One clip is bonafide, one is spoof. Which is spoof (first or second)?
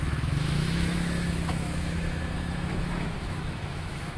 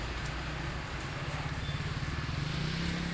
first